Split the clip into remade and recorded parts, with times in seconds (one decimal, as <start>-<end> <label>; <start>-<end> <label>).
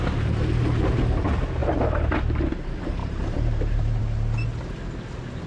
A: 0.0-1.6 recorded; 1.6-2.5 remade; 2.5-3.0 recorded; 3.0-4.0 remade; 4.0-5.5 recorded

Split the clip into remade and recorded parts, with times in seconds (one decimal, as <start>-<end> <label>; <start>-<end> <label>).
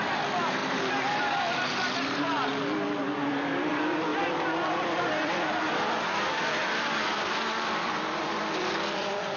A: 0.0-2.5 remade; 2.5-3.3 recorded; 3.3-9.4 remade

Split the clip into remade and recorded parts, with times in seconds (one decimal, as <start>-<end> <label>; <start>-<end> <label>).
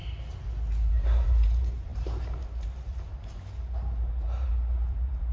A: 0.0-0.9 recorded; 0.9-5.3 remade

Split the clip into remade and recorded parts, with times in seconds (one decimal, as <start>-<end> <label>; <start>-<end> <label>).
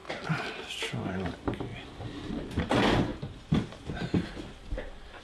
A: 0.0-1.0 remade; 1.0-1.7 recorded; 1.7-2.3 remade; 2.3-3.1 recorded; 3.1-5.2 remade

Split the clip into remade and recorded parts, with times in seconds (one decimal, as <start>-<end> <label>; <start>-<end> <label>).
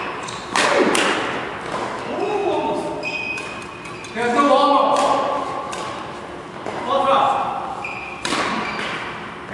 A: 0.0-9.5 recorded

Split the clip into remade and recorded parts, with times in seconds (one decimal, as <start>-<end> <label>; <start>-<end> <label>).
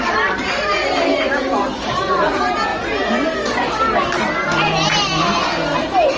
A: 0.0-2.7 remade; 2.7-5.8 recorded; 5.8-6.2 remade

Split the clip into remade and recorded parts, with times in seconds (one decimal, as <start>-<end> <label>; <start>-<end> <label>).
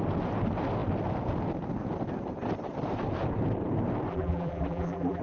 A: 0.0-4.1 recorded; 4.1-5.2 remade